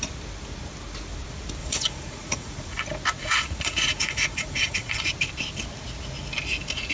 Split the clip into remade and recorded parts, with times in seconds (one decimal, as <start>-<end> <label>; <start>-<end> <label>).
0.0-1.6 recorded; 1.6-2.8 remade; 2.8-3.2 recorded; 3.2-5.1 remade; 5.1-6.9 recorded